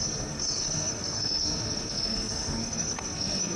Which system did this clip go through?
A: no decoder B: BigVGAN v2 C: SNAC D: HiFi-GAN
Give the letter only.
C